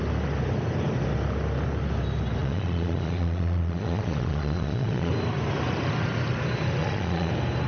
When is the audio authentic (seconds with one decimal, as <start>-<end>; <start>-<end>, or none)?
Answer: 0.0-2.4; 5.1-6.8; 7.3-7.7